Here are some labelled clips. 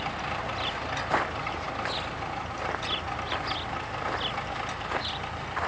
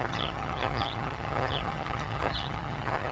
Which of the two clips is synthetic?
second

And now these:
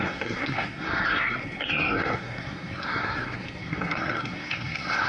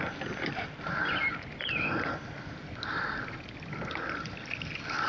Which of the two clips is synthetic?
first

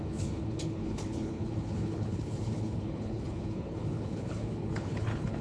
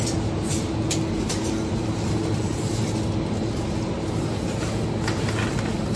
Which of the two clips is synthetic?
first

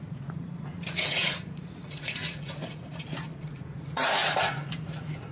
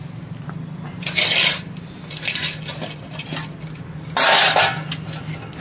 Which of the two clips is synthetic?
first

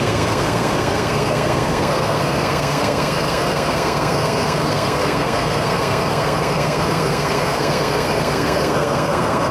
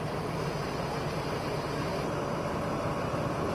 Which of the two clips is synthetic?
first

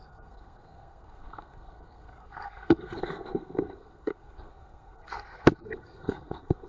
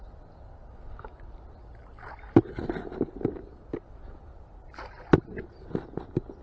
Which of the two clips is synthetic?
first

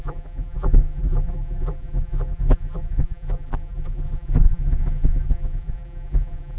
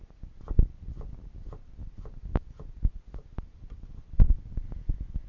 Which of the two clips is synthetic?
first